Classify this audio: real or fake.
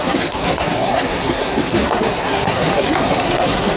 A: fake